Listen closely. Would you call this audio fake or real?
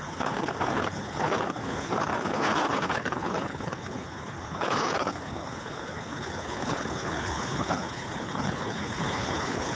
fake